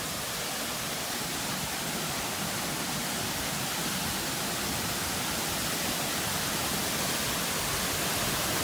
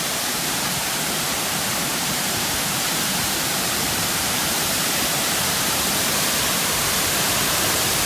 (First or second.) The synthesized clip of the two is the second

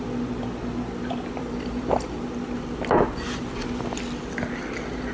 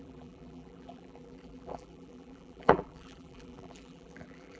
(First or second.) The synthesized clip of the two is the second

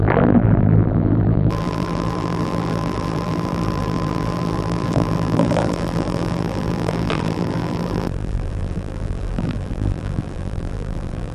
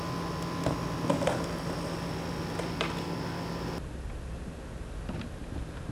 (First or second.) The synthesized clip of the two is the first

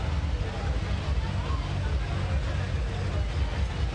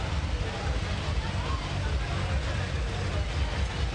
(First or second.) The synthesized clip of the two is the second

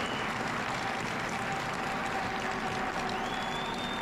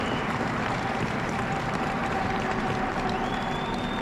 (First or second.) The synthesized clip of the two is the second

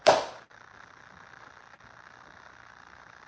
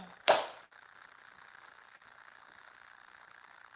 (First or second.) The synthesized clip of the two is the first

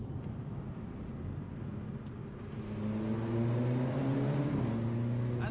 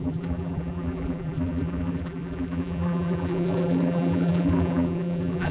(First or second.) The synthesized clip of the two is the second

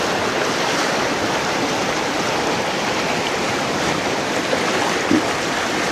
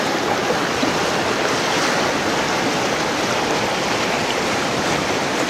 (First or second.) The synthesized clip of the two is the first